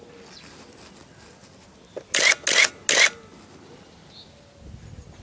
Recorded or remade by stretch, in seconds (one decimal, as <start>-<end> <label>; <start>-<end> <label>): 0.0-5.2 recorded